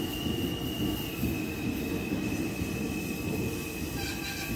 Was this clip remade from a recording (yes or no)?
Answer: no